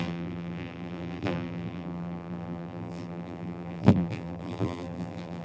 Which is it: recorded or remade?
remade